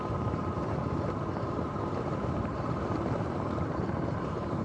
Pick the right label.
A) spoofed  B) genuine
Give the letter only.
A